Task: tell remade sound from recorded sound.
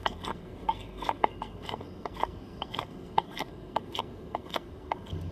remade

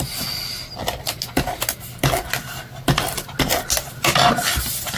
recorded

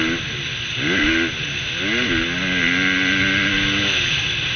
recorded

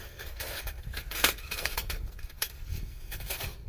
remade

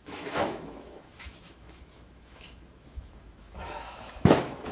remade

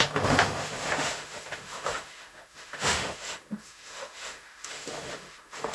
remade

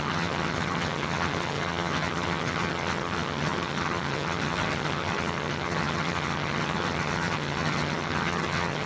remade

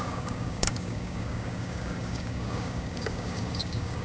remade